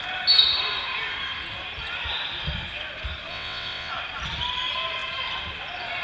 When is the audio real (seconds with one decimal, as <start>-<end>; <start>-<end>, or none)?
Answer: 0.0-3.3; 3.9-6.0